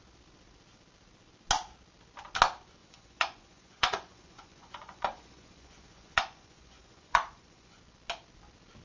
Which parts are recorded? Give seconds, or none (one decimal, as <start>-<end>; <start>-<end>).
0.0-2.8; 7.8-8.8